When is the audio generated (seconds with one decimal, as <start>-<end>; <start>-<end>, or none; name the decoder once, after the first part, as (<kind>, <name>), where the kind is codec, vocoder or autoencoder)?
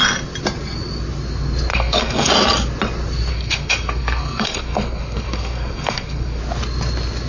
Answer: 1.7-2.3 (codec, SNAC); 3.3-6.4